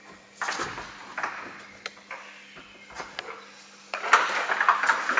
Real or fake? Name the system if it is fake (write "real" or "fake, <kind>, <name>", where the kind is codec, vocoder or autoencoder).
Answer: real